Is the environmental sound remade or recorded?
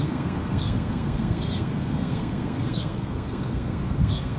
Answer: remade